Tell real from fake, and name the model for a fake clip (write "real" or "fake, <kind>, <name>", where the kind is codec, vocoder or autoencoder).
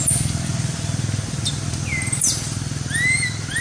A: real